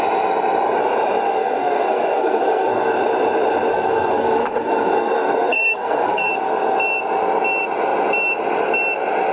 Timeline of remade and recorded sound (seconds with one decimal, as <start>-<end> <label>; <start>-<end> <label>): 0.0-1.4 recorded; 1.4-2.9 remade; 2.9-3.7 recorded; 3.7-6.3 remade; 6.3-9.3 recorded